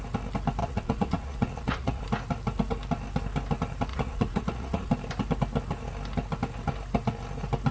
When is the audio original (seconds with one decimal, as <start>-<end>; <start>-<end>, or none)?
0.0-0.6; 2.0-3.9; 4.9-7.7